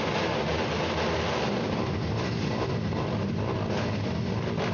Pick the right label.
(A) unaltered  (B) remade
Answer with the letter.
A